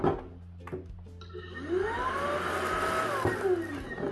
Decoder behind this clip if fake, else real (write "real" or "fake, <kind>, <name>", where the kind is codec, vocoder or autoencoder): real